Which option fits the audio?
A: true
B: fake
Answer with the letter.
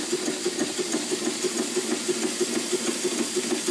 A